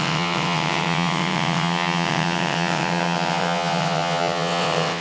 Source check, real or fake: fake